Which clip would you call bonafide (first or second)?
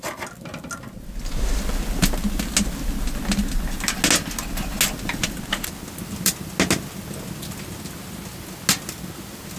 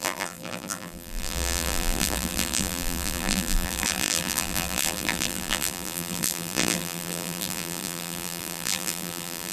first